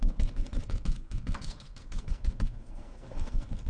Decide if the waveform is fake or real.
fake